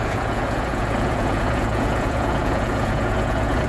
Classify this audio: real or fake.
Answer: fake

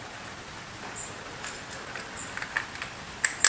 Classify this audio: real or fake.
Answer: real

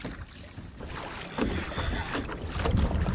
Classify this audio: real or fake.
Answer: real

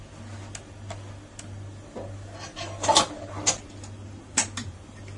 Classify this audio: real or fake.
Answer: real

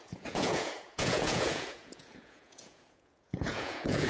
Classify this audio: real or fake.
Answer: fake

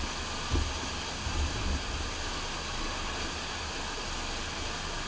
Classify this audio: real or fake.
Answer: real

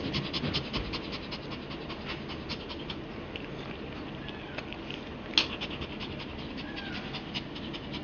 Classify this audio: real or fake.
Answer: real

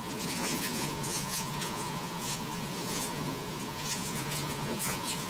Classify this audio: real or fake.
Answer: fake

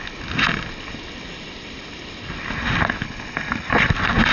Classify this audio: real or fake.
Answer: real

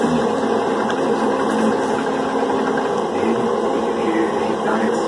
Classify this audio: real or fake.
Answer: real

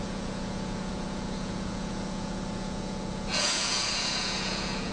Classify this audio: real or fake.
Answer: fake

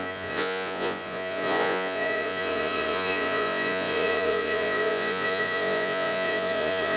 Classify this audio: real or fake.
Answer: fake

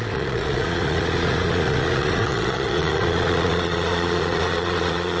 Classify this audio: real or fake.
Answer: fake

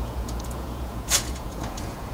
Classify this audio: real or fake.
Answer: fake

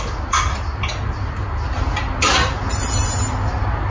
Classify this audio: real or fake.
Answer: real